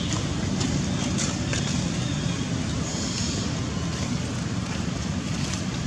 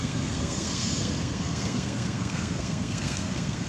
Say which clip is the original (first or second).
first